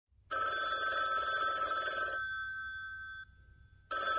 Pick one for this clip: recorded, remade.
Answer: recorded